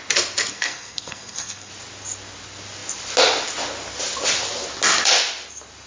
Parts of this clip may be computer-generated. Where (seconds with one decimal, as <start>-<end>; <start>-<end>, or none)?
0.5-1.7